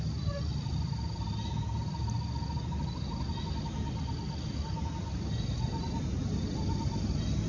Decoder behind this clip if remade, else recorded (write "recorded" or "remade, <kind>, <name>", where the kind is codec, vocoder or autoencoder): recorded